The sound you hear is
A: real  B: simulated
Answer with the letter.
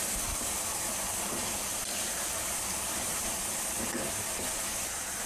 B